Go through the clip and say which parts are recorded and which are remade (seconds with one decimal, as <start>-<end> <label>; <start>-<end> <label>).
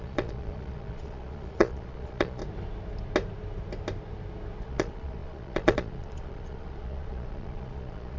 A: 0.0-2.4 remade; 2.4-4.6 recorded; 4.6-8.2 remade